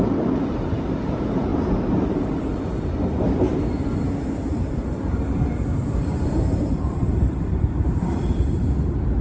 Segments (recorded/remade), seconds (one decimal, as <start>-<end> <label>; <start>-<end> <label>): 0.0-1.5 remade; 1.5-2.1 recorded; 2.1-3.5 remade; 3.5-4.5 recorded; 4.5-9.2 remade